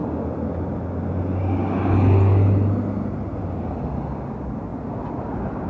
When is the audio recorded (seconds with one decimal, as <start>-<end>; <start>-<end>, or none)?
0.0-5.7